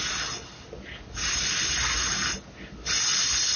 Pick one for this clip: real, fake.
real